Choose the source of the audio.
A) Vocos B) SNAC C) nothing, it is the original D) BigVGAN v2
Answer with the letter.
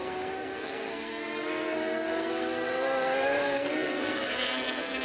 B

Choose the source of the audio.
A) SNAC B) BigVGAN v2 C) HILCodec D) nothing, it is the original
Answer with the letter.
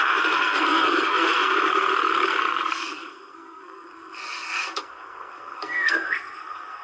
A